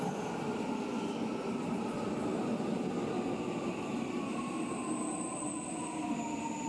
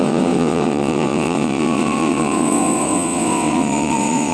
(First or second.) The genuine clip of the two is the first